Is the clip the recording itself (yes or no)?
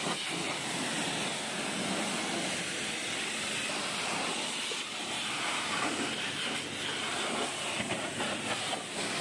yes